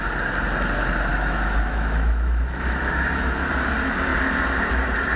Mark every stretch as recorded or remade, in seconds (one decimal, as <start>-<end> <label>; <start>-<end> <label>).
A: 0.0-1.1 recorded; 1.1-3.5 remade; 3.5-5.2 recorded